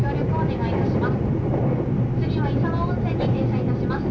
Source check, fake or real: real